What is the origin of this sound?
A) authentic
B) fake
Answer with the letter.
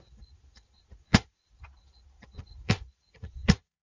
B